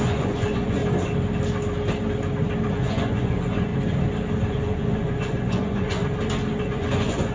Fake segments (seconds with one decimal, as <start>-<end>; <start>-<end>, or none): 0.0-0.8; 2.7-3.7; 4.5-6.0; 6.6-7.3